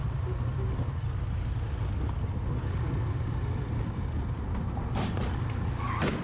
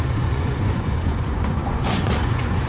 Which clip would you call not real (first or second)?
second